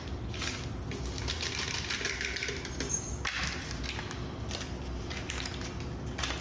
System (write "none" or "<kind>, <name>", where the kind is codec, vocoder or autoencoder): none